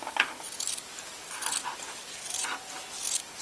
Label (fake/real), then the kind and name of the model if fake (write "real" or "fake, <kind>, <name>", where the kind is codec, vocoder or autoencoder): real